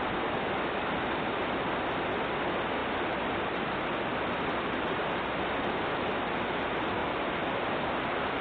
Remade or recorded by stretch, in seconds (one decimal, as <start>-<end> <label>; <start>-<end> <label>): 0.0-2.8 recorded; 2.8-5.2 remade; 5.2-7.0 recorded; 7.0-8.4 remade

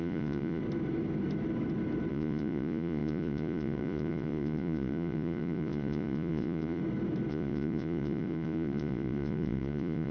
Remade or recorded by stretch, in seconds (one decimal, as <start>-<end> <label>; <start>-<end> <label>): 0.0-0.6 remade; 0.6-2.1 recorded; 2.1-6.8 remade; 6.8-7.3 recorded; 7.3-10.1 remade

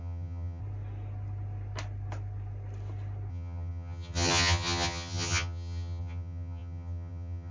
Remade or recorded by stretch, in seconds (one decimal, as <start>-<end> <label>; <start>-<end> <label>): 0.0-0.6 remade; 0.6-3.3 recorded; 3.3-7.5 remade

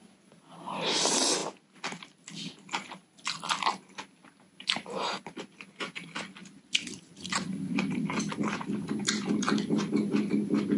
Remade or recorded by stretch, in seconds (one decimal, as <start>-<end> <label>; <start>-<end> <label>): 0.0-6.4 recorded; 6.4-7.3 remade; 7.3-10.8 recorded

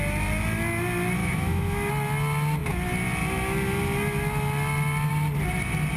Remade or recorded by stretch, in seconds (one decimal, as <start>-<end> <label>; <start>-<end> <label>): 0.0-1.2 recorded; 1.2-1.9 remade; 1.9-6.0 recorded

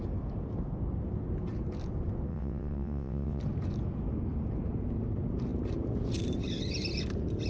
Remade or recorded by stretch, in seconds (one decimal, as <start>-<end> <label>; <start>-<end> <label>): 0.0-2.3 recorded; 2.3-3.4 remade; 3.4-7.5 recorded

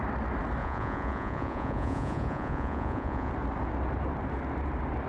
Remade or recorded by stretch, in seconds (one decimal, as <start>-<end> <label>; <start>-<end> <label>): 0.0-0.6 recorded; 0.6-3.3 remade; 3.3-5.1 recorded